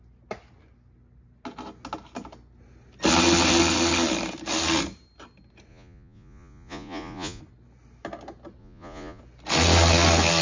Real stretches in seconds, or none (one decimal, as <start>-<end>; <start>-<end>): 0.0-5.7; 7.4-8.6; 9.2-10.4

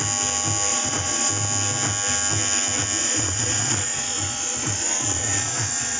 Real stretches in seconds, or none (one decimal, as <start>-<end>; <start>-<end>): 0.0-0.7; 1.3-3.0

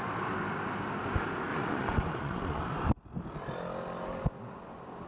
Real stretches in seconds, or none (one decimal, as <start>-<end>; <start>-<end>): 0.0-1.5; 2.9-5.1

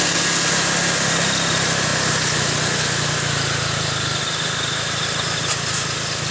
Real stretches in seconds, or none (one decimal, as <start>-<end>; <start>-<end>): 0.0-6.3

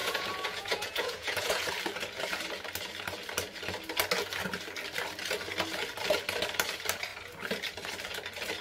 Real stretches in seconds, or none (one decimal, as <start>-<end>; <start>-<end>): 1.7-8.6

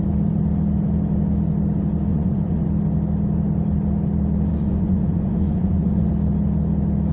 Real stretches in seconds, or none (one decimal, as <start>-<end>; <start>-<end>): 0.0-2.1; 2.6-4.5; 6.1-7.1

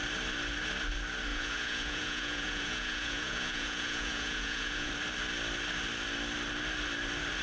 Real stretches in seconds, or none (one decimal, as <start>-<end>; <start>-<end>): 0.0-1.3; 4.9-7.4